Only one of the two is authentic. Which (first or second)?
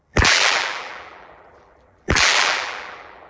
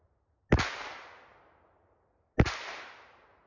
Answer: second